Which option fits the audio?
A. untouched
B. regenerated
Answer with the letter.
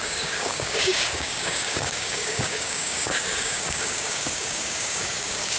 B